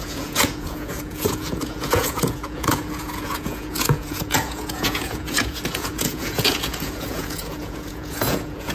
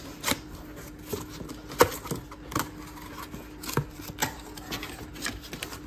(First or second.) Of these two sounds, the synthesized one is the first